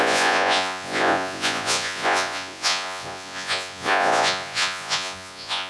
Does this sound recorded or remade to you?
remade